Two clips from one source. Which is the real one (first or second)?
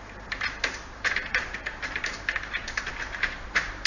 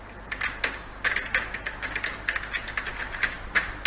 second